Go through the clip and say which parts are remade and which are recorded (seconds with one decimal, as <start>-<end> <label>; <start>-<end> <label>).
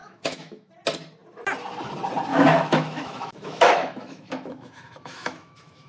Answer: 0.0-0.7 remade; 0.7-2.3 recorded; 2.3-5.9 remade